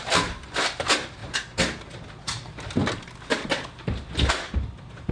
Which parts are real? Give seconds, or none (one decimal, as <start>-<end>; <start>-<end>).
0.0-5.1

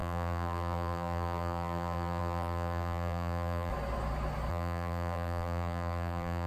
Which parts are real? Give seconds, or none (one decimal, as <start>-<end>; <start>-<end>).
3.7-4.5